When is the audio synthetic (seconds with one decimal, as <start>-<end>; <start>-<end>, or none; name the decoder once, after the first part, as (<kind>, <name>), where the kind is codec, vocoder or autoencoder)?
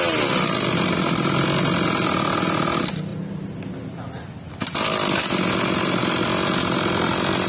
none